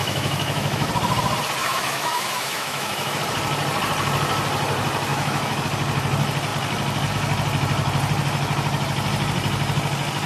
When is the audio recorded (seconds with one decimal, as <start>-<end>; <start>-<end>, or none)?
0.9-1.6; 3.2-5.1; 5.6-10.3